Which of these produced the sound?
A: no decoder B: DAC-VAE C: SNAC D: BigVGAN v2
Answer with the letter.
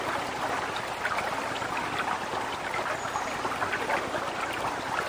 A